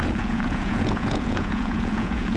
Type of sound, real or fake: fake